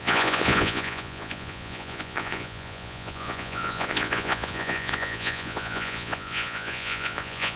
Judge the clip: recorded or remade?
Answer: remade